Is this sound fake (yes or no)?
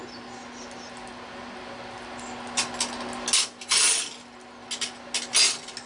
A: no